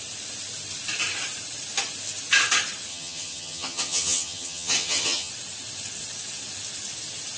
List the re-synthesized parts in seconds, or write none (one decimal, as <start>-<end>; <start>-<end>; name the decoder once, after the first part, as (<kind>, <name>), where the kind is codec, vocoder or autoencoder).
2.9-5.3 (vocoder, HiFi-GAN)